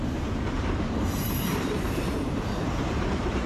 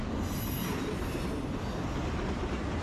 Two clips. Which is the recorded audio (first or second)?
second